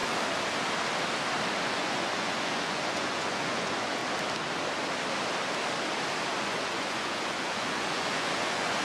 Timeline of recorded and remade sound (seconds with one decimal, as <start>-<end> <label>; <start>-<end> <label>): 0.0-1.6 recorded; 1.6-4.0 remade; 4.0-6.4 recorded; 6.4-8.8 remade